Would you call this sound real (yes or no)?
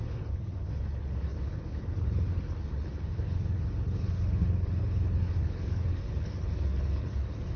no